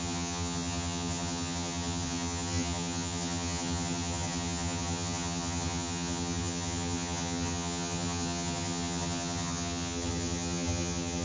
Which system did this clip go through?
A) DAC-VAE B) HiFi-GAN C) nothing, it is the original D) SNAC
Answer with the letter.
B